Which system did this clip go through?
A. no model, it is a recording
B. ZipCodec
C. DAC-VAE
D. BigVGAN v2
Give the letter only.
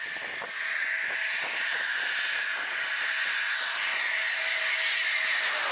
A